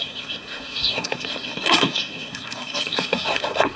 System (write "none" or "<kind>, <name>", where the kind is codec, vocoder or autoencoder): codec, SNAC